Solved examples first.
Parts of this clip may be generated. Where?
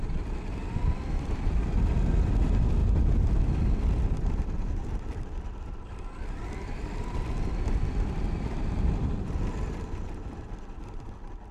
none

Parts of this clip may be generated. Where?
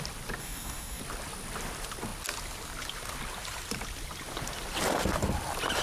0.4-1.0 (codec, DAC)